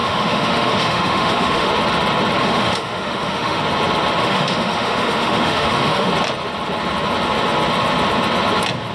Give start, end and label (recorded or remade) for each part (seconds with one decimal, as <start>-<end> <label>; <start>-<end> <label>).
0.0-1.7 remade; 1.7-2.4 recorded; 2.4-3.6 remade; 3.6-4.2 recorded; 4.2-6.1 remade; 6.1-8.9 recorded